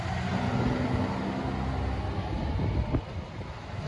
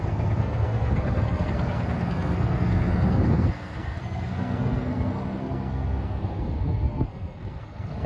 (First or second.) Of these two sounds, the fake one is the second